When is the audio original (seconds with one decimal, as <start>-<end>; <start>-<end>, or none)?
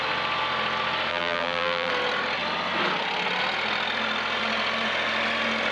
0.0-1.1; 1.9-5.7